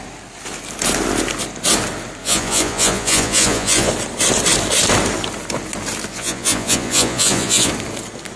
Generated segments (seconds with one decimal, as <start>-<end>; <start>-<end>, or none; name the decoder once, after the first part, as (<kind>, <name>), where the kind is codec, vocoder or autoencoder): 2.2-3.9 (vocoder, Vocos); 6.1-7.7